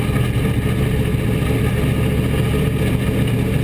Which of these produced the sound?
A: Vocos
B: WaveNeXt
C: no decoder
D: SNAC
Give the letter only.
C